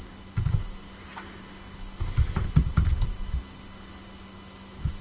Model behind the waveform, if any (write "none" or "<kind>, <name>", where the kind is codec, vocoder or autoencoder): none